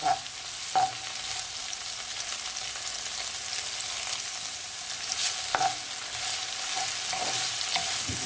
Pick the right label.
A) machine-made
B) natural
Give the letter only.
B